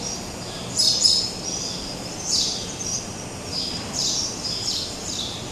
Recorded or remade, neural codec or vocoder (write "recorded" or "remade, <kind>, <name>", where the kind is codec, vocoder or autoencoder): recorded